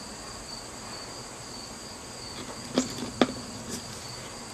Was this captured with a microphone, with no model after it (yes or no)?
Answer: yes